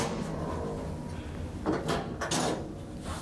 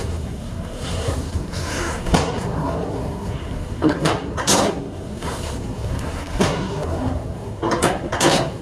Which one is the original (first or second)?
first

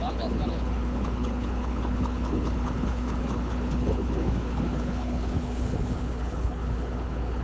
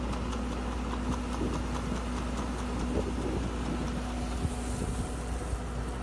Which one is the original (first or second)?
second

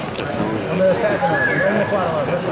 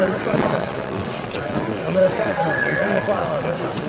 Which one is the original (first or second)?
first